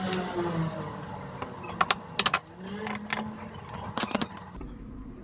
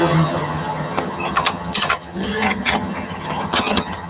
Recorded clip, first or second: first